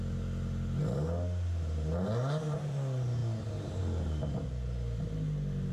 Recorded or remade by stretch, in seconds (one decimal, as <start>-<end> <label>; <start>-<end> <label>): 0.0-5.7 recorded